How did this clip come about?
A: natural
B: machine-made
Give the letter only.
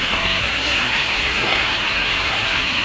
B